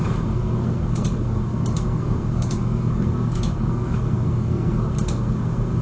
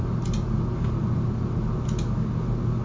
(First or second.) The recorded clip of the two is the second